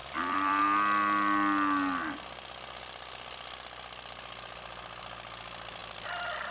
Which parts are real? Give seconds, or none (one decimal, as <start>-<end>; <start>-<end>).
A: 0.6-6.5